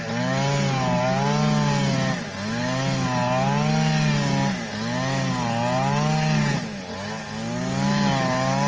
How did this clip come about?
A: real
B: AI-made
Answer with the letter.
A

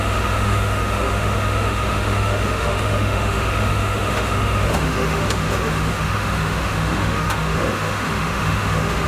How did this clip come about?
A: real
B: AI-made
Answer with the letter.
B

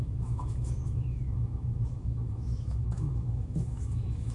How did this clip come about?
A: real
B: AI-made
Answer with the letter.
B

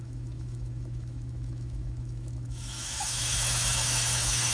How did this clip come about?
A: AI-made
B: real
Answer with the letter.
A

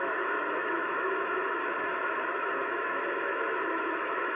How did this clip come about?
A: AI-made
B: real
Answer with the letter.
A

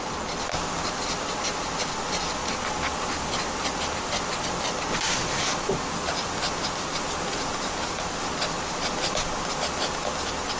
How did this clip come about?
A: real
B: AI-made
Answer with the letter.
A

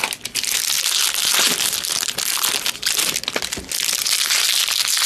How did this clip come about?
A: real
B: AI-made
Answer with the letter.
A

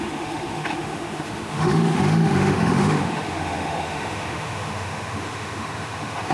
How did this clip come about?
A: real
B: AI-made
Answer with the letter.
B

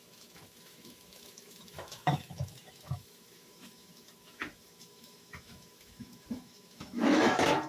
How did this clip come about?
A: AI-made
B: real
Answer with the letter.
A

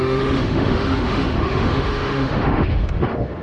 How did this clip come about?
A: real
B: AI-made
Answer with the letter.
B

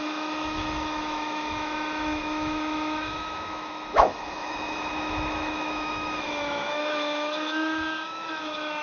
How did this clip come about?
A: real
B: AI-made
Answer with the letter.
B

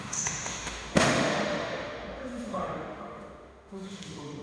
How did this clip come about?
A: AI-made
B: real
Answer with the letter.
A